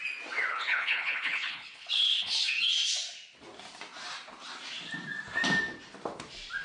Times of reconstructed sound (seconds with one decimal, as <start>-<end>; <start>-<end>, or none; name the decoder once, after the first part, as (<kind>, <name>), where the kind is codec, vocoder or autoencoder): 0.5-2.6 (codec, HILCodec)